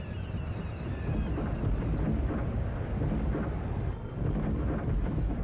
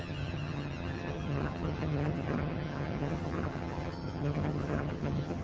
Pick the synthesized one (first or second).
second